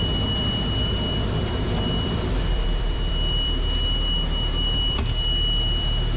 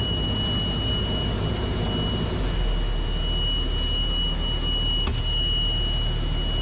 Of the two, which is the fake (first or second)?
first